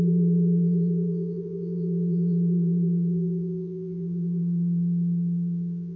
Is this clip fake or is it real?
fake